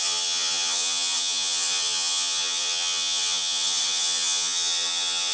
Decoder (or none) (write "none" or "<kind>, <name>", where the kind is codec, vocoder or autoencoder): vocoder, HiFi-GAN